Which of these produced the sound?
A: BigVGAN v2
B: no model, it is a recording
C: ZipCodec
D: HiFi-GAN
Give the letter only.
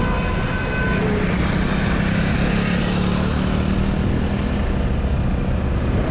B